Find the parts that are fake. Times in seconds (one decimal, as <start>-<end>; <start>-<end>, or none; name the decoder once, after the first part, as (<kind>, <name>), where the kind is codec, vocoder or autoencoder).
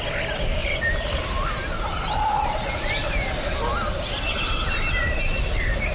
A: 0.6-4.1 (vocoder, BigVGAN v2); 5.0-5.9